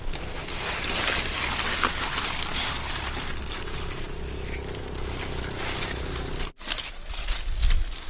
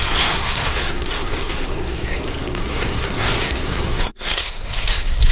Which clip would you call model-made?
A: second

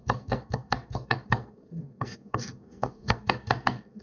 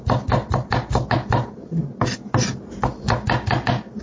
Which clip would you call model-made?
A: first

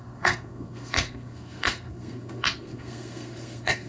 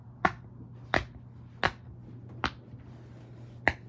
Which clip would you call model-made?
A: first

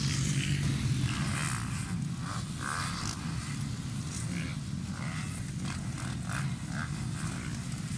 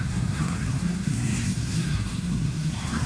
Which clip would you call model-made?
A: second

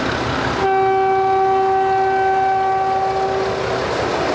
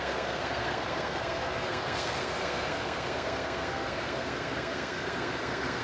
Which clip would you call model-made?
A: second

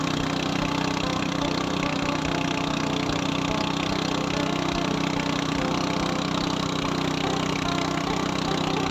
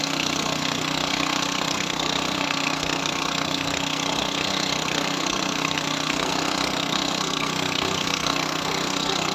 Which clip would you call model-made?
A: second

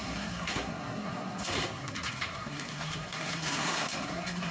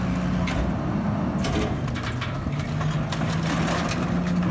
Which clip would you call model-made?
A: first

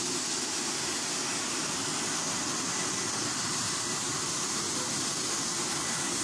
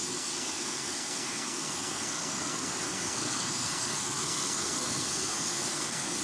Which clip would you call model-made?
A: second